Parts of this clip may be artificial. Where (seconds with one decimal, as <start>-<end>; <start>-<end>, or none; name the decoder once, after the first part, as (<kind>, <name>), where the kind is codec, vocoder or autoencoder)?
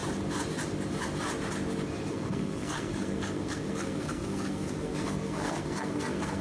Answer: 2.1-6.4 (codec, SNAC)